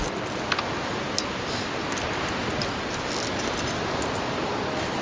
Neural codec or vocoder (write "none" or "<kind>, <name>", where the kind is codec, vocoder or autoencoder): none